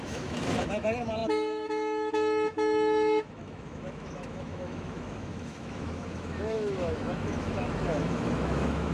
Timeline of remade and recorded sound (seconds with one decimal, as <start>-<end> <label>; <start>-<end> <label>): 0.0-8.9 remade